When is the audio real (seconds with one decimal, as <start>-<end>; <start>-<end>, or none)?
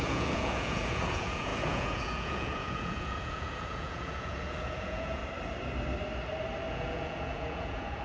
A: 5.2-6.7